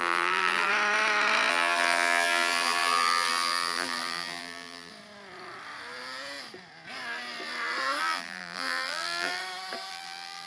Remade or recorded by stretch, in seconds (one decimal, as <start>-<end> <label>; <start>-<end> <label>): 0.0-0.7 remade; 0.7-1.5 recorded; 1.5-4.9 remade; 4.9-8.0 recorded; 8.0-9.4 remade; 9.4-9.9 recorded; 9.9-10.5 remade